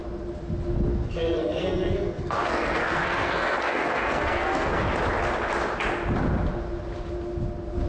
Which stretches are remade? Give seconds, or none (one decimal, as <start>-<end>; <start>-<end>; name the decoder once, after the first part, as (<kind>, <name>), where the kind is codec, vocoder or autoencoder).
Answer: 0.9-4.8 (codec, SNAC)